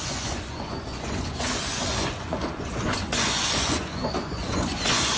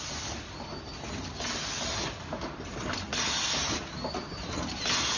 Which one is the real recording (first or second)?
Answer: second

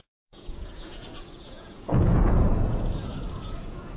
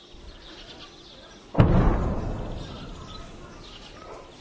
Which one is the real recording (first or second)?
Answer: second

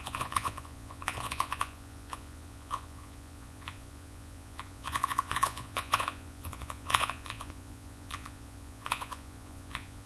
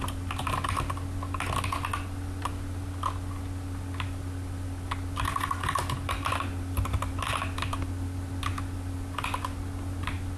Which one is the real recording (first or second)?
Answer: second